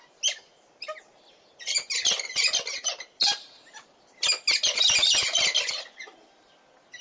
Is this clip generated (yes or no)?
no